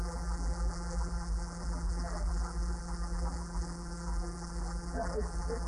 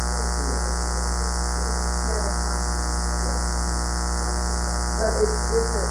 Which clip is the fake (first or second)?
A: first